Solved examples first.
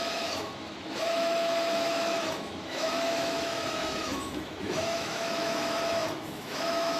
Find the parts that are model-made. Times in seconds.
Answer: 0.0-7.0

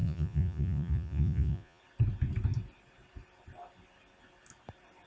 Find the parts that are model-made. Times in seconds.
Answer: 0.0-1.8